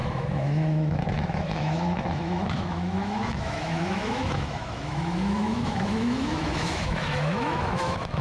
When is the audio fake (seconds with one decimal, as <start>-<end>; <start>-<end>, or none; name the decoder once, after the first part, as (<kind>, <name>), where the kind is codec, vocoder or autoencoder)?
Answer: 0.0-8.2 (autoencoder, DAC-VAE)